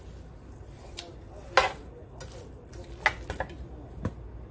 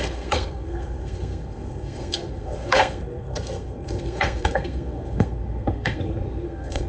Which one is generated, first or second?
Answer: second